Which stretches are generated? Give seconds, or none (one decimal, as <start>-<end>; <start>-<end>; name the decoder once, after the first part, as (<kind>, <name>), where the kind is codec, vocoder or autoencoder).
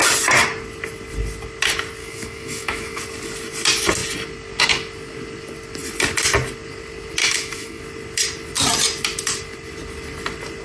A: 2.0-3.0 (autoencoder, DAC-VAE); 7.2-7.8